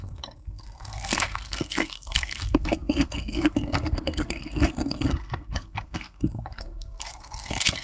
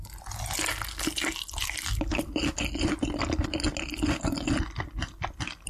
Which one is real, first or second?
second